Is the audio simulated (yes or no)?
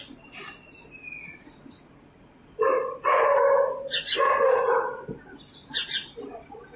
no